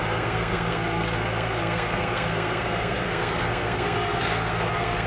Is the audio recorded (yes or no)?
no